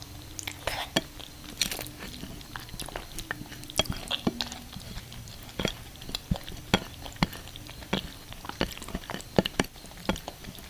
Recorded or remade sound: recorded